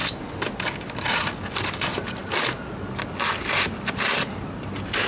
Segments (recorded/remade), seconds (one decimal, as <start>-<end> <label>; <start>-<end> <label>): 0.0-5.1 recorded